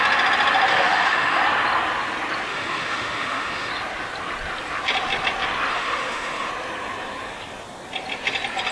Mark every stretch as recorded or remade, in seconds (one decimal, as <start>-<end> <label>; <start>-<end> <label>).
0.0-0.7 recorded; 0.7-1.4 remade; 1.4-2.5 recorded; 2.5-3.7 remade; 3.7-5.7 recorded; 5.7-6.5 remade; 6.5-8.7 recorded